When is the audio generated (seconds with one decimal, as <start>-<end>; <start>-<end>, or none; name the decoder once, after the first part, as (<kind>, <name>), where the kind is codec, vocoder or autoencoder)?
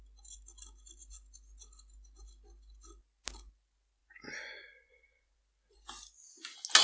4.0-5.4 (vocoder, Vocos)